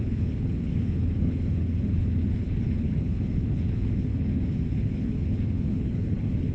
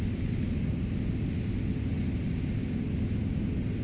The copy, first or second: first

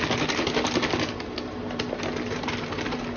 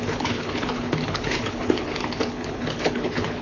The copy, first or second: second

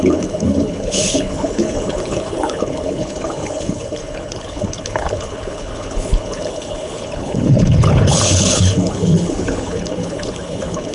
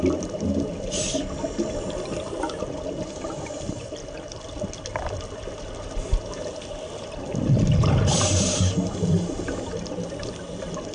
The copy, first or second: first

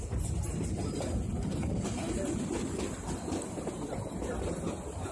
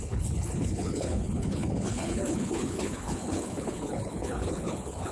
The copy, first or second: second